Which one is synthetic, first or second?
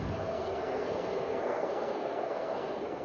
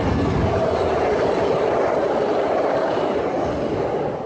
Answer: first